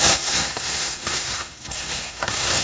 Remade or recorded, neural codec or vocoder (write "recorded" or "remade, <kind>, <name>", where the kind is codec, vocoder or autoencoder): remade, codec, SNAC